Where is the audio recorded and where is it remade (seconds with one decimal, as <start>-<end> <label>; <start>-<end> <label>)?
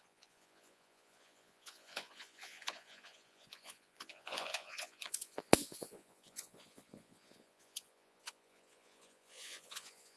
0.0-10.2 remade